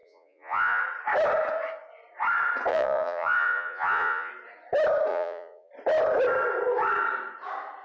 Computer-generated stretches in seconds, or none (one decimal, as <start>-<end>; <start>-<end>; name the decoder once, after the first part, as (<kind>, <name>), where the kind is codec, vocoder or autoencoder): 0.0-0.8 (vocoder, Vocos); 2.7-4.3; 5.1-5.7